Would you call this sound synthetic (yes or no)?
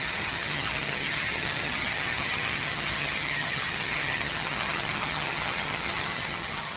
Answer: yes